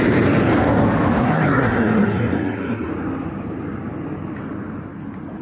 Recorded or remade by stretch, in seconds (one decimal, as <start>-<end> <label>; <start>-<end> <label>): 0.0-1.2 recorded; 1.2-2.9 remade; 2.9-5.4 recorded